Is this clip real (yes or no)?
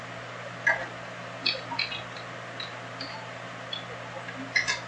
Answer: yes